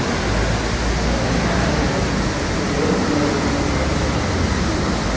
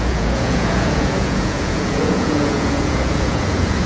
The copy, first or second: second